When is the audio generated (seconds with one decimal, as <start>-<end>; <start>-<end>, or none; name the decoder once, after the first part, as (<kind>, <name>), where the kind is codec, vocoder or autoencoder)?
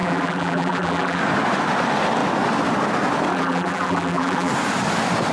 0.0-1.2 (vocoder, BigVGAN v2); 3.3-4.5